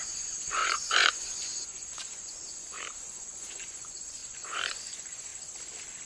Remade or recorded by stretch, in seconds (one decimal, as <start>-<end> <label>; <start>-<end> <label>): 0.0-5.3 remade; 5.3-6.1 recorded